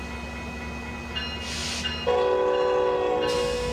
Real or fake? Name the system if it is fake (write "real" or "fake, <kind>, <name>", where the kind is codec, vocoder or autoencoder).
real